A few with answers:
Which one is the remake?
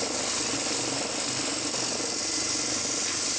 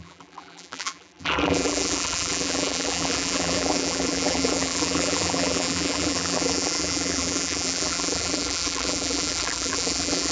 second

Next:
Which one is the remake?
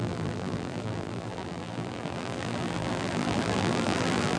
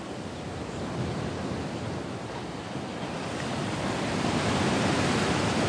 first